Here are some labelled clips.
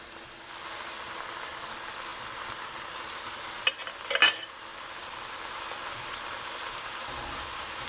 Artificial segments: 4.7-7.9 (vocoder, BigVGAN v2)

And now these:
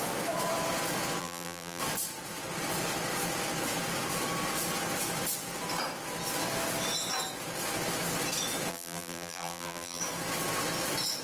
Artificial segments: 1.2-1.8 (vocoder, BigVGAN v2); 8.7-10.0

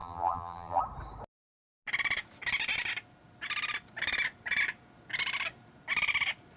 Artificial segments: 0.0-0.8 (vocoder, BigVGAN v2)

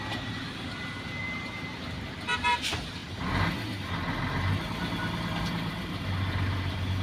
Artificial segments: 0.0-3.0 (vocoder, BigVGAN v2); 5.4-7.0

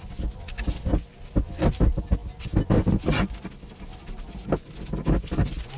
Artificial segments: none